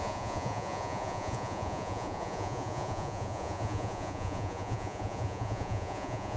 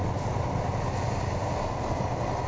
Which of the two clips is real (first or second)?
second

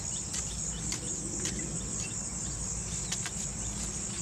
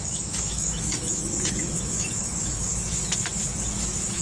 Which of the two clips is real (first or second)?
first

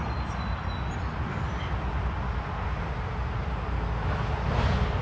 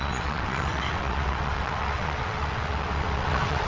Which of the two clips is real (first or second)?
first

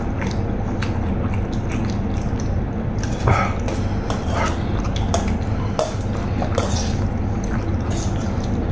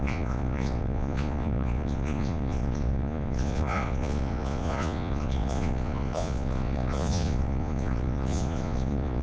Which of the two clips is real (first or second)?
first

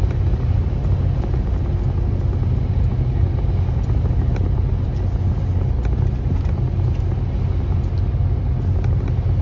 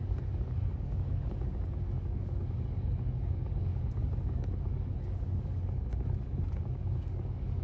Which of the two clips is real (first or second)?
first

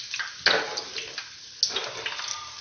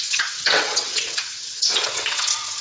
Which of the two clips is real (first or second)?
first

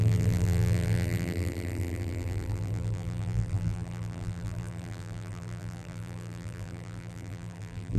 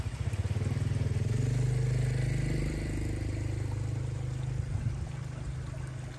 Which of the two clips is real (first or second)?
second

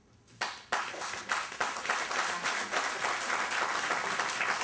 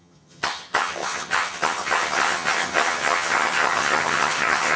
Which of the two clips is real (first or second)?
first